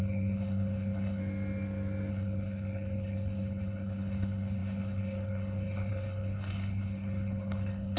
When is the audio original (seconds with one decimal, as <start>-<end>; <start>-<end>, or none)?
1.2-2.1

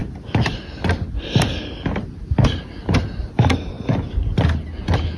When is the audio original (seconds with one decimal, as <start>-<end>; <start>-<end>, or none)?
0.0-5.2

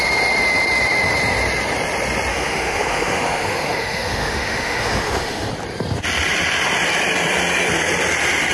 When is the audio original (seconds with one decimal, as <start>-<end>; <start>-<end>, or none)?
0.0-2.3; 5.5-8.5

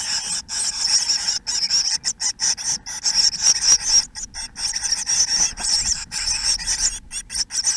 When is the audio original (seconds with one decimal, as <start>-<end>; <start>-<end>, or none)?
0.0-5.3; 6.2-7.8

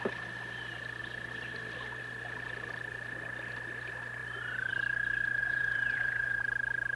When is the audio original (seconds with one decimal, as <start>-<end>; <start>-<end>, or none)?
0.0-5.4; 6.4-7.0

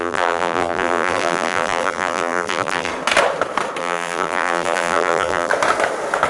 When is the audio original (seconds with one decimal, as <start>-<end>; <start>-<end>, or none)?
2.9-3.8; 5.5-6.3

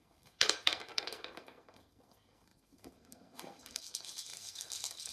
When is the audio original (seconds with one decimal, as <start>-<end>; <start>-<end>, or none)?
none

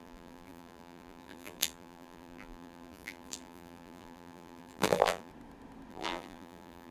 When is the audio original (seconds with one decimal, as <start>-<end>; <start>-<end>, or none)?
5.3-5.9